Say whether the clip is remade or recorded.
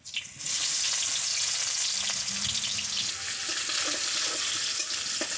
recorded